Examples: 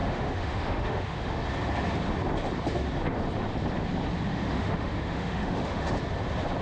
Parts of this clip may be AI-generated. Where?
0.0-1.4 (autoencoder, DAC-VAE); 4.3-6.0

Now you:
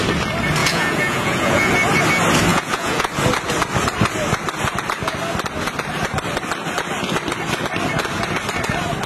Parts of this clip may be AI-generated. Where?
0.6-1.7 (vocoder, Vocos); 2.5-3.1